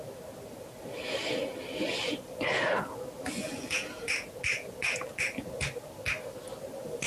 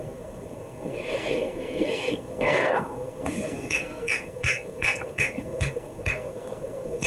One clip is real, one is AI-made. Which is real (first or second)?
first